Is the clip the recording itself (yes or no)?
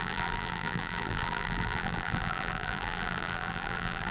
no